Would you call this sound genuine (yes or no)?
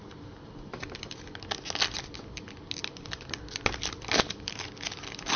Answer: yes